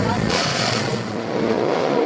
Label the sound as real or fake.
fake